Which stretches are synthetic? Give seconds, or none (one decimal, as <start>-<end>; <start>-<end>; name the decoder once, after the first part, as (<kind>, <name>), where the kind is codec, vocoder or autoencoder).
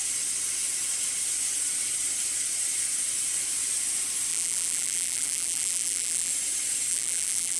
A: 4.3-6.3 (vocoder, BigVGAN v2); 6.9-7.6